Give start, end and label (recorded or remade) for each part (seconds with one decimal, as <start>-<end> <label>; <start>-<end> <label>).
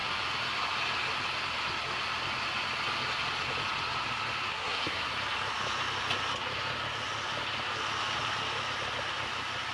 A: 0.0-4.5 recorded; 4.5-5.1 remade; 5.1-9.7 recorded